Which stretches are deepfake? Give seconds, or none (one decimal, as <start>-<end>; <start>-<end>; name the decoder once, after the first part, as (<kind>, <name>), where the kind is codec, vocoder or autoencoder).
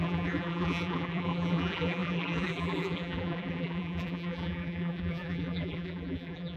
0.0-6.6 (vocoder, BigVGAN v2)